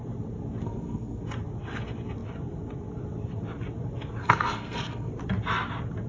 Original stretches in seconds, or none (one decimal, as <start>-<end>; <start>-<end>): 0.0-0.6; 1.2-4.2; 5.1-6.1